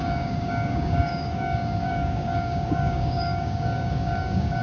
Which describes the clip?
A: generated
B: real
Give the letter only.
A